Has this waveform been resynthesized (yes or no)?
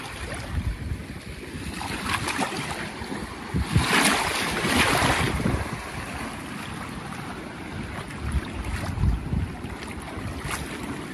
no